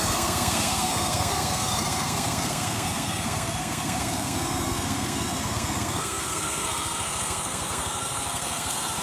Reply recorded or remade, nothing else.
remade